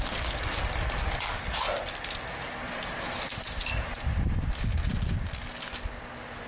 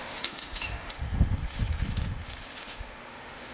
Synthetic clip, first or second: second